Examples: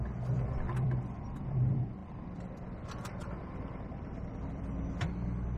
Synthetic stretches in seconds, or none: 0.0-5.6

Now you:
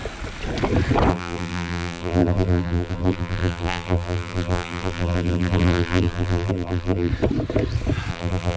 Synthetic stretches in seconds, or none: 1.1-7.1; 8.1-8.6

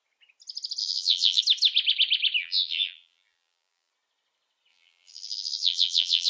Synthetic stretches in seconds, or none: 0.8-1.4; 2.4-3.9; 4.7-6.3